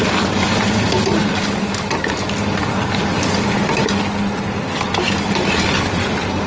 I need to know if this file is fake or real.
real